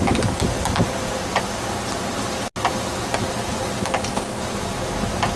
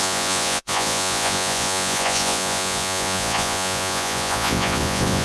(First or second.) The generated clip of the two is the second